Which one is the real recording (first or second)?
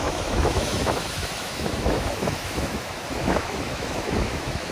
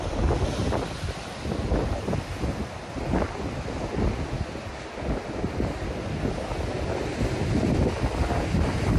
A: second